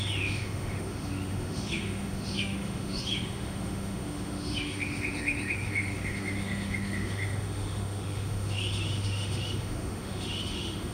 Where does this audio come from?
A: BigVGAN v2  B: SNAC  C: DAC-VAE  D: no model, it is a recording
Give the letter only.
C